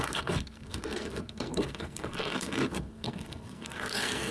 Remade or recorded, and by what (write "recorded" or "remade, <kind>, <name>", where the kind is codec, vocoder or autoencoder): remade, codec, SNAC